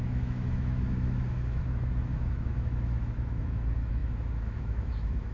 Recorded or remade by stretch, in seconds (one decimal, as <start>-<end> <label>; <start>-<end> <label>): 0.0-5.3 remade